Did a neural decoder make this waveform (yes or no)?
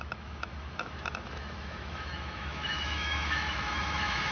yes